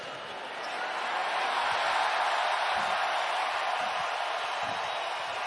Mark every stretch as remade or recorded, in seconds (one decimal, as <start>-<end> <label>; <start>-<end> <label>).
0.0-5.5 recorded